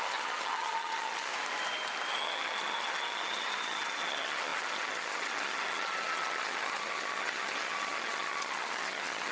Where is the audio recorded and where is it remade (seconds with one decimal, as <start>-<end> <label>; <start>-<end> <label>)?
0.0-1.3 remade; 1.3-2.1 recorded; 2.1-9.3 remade

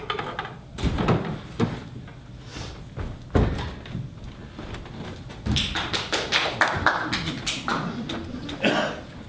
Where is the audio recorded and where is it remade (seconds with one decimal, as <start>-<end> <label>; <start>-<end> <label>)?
0.0-9.3 recorded

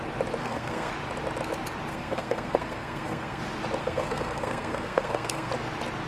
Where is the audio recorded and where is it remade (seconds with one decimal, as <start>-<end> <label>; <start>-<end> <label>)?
0.0-0.4 recorded; 0.4-0.9 remade; 0.9-1.9 recorded; 1.9-3.4 remade; 3.4-3.8 recorded; 3.8-5.5 remade; 5.5-6.1 recorded

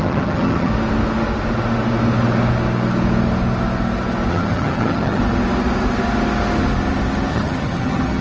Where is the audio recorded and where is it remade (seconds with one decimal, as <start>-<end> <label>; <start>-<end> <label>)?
0.0-0.7 remade; 0.7-4.3 recorded; 4.3-5.2 remade; 5.2-7.3 recorded; 7.3-8.2 remade